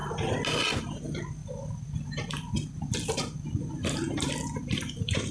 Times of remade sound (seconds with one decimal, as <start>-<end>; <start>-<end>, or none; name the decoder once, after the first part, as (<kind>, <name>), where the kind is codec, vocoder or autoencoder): 0.8-5.3 (vocoder, BigVGAN v2)